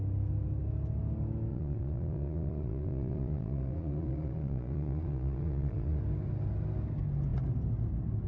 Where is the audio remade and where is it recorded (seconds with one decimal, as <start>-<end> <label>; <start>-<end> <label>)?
0.0-1.5 recorded; 1.5-6.0 remade; 6.0-8.3 recorded